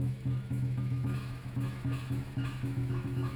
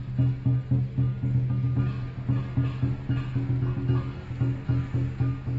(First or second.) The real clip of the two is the second